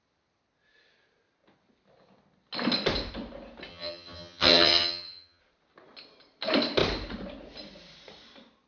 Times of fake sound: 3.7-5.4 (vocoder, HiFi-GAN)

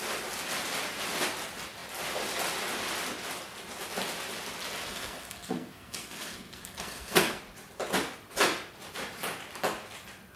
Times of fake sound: 4.8-7.4 (codec, SNAC)